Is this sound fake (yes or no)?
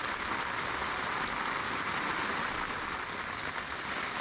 no